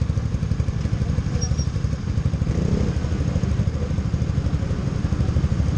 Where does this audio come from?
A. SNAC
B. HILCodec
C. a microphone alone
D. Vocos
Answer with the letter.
C